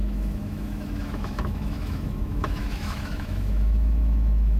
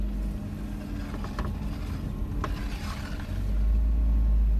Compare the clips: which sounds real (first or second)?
second